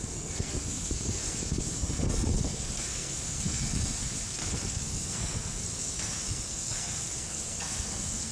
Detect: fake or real fake